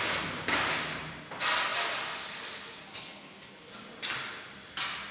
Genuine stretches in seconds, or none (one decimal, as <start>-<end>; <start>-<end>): 0.0-2.9; 3.7-5.1